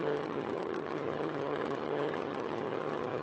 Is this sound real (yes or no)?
no